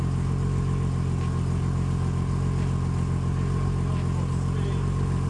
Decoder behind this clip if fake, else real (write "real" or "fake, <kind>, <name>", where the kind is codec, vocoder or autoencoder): real